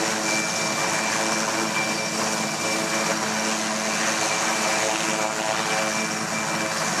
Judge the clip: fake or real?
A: real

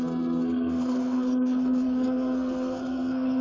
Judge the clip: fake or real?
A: fake